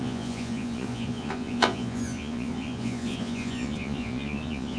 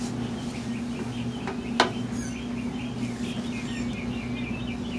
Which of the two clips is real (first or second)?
second